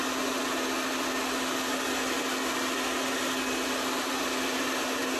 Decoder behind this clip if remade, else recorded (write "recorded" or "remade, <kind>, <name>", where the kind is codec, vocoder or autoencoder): recorded